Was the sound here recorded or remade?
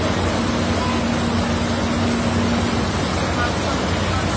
recorded